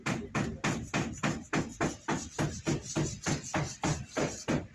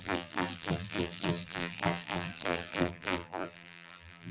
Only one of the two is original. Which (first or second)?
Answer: first